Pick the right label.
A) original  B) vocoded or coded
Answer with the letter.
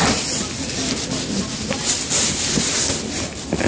A